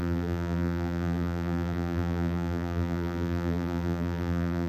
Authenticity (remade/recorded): remade